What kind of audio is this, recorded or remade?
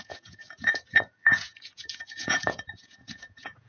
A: remade